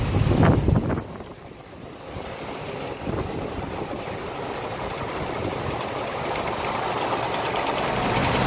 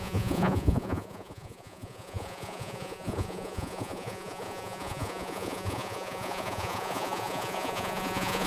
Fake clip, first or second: second